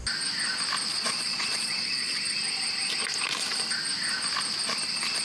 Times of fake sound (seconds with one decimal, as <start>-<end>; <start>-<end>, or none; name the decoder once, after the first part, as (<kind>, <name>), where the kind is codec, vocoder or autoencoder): 0.9-2.2 (vocoder, Vocos)